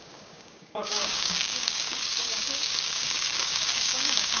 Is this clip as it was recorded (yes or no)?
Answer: no